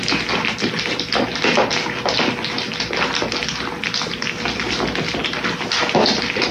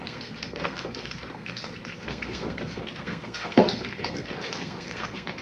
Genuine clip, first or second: first